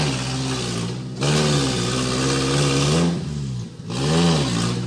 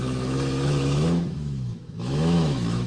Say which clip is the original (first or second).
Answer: first